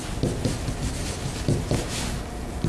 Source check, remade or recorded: recorded